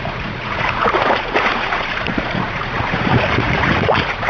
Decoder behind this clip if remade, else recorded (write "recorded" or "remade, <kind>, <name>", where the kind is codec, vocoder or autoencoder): remade, vocoder, Vocos